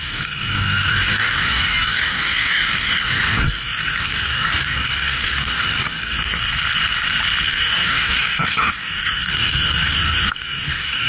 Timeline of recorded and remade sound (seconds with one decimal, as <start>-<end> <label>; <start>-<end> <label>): 0.0-6.4 remade; 6.4-7.4 recorded; 7.4-11.1 remade